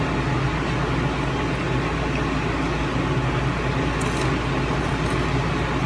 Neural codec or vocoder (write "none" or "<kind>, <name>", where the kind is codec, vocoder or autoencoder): none